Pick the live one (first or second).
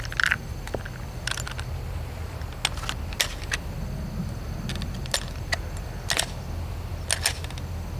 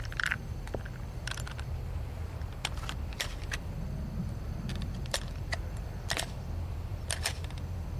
first